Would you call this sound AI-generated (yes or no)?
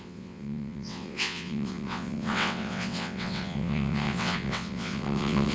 yes